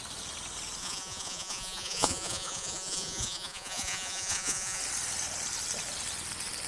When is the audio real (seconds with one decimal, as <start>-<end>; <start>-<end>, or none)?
0.0-0.8; 4.8-6.7